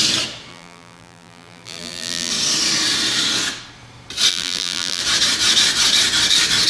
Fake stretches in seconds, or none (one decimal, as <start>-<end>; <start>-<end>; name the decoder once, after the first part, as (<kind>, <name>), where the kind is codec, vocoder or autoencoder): 0.5-2.3 (vocoder, BigVGAN v2); 4.3-5.0